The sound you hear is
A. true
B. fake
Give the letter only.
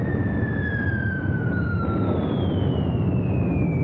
A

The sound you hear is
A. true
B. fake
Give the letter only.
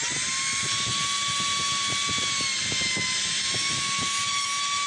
A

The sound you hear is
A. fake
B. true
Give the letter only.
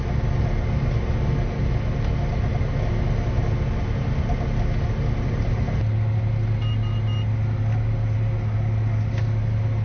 B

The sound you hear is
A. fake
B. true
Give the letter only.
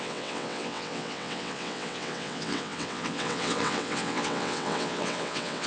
A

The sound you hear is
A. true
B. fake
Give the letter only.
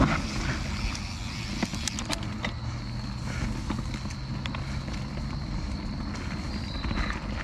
A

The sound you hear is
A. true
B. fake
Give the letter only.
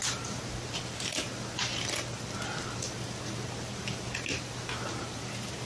A